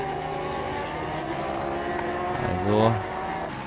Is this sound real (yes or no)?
yes